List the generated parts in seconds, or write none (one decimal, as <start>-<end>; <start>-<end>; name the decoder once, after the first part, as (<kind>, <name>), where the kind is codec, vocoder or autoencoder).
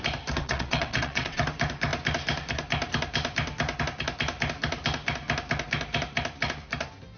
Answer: 0.4-1.4 (vocoder, WaveNeXt)